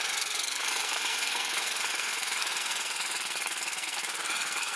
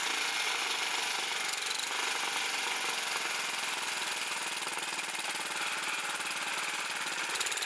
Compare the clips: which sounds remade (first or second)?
first